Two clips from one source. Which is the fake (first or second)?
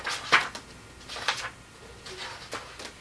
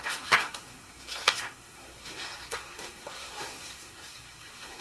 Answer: second